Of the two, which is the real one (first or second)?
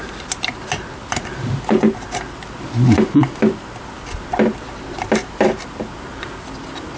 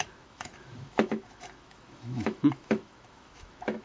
first